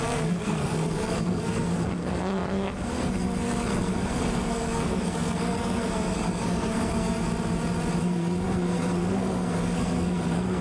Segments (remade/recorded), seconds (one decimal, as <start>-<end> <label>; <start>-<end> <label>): 0.0-7.3 remade; 7.3-8.0 recorded; 8.0-10.6 remade